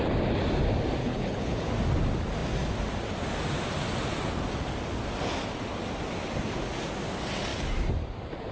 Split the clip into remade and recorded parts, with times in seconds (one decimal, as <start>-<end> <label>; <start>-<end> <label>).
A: 0.0-1.0 recorded; 1.0-1.7 remade; 1.7-8.5 recorded